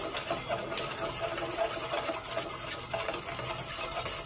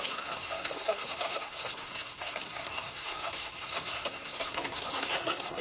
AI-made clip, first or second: second